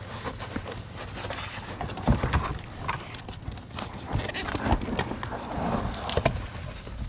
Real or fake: real